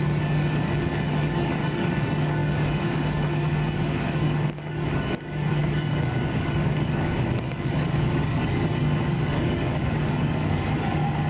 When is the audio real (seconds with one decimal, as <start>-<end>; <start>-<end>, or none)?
none